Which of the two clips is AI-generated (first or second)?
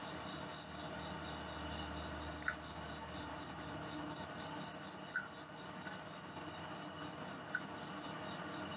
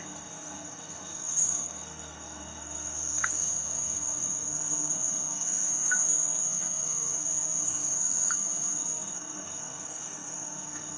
second